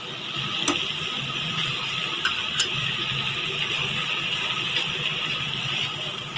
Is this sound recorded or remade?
recorded